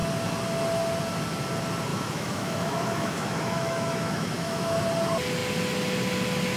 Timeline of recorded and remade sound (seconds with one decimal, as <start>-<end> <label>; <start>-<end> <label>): 0.0-1.9 recorded; 1.9-4.8 remade; 4.8-6.6 recorded